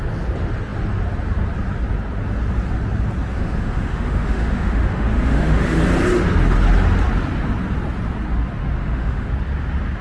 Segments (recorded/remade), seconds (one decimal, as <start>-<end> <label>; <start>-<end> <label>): 0.0-3.3 recorded; 3.3-5.8 remade; 5.8-8.8 recorded; 8.8-9.3 remade; 9.3-10.0 recorded

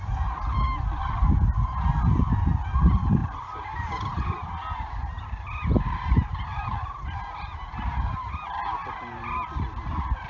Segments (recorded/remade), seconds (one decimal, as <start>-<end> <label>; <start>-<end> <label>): 0.0-3.2 recorded; 3.2-8.3 remade; 8.3-10.3 recorded

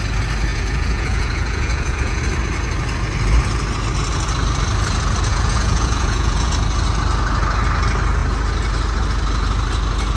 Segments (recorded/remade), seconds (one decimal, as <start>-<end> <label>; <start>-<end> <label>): 0.0-0.5 recorded; 0.5-2.2 remade; 2.2-5.3 recorded; 5.3-6.5 remade; 6.5-10.2 recorded

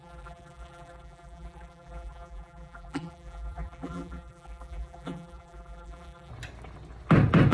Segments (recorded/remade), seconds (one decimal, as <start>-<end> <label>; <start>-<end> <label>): 0.0-6.3 remade; 6.3-7.5 recorded

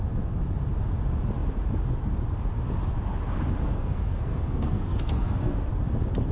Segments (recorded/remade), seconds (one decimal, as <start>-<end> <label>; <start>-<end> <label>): 0.0-3.6 recorded; 3.6-5.7 remade; 5.7-6.3 recorded